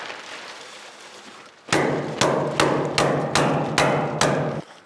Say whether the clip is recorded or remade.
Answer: recorded